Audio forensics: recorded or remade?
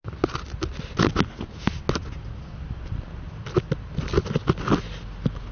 recorded